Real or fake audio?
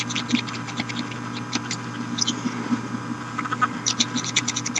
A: real